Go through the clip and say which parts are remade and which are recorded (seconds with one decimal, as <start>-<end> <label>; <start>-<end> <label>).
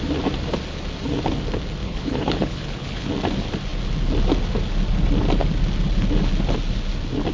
0.0-1.8 recorded; 1.8-3.1 remade; 3.1-7.3 recorded